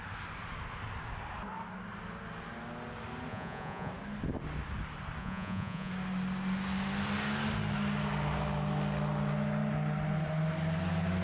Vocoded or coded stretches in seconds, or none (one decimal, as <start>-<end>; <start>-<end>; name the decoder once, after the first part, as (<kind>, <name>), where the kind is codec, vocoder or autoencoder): 3.3-3.9 (vocoder, Vocos); 5.2-5.9